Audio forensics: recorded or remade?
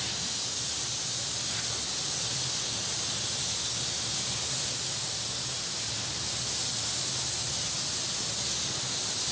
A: recorded